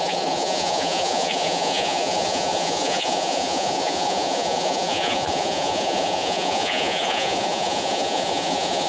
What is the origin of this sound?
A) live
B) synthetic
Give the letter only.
B